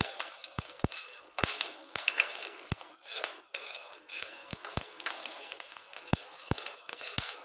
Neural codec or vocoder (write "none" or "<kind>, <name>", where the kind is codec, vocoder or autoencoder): codec, SNAC